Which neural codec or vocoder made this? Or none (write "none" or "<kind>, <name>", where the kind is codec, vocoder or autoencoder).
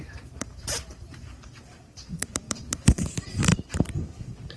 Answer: vocoder, BigVGAN v2